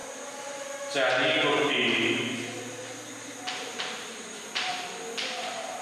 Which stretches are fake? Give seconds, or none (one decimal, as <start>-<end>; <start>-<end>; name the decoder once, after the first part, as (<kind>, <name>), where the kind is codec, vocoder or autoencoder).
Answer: 3.5-4.7 (vocoder, BigVGAN v2); 5.2-5.8